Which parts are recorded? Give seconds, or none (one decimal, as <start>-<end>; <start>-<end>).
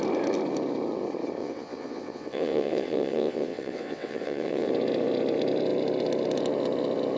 0.0-1.4; 4.7-7.2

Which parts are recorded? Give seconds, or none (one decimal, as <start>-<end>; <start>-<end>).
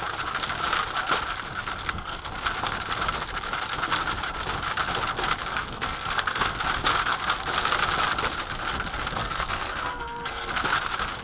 0.0-1.8; 2.3-5.5; 6.6-9.2; 10.5-11.2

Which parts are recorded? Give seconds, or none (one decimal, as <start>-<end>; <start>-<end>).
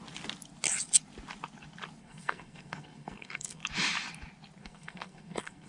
0.0-2.0; 3.6-4.6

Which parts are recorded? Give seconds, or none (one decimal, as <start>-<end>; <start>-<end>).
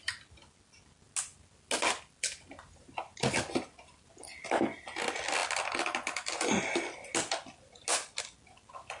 0.0-9.0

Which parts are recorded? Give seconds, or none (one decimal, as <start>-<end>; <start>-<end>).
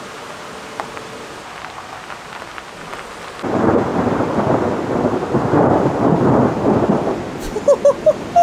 0.0-3.9; 4.4-8.4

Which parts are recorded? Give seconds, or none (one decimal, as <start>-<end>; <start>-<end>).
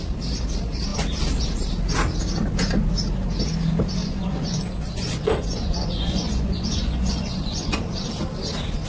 0.0-4.0; 7.8-8.9